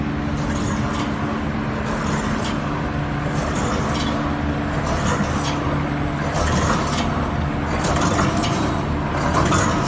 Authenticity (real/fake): real